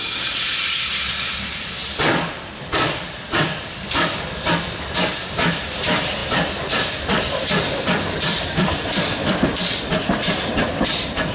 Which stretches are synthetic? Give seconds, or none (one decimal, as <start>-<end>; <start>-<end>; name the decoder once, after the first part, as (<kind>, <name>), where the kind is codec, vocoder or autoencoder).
0.0-9.9 (vocoder, BigVGAN v2); 10.7-11.3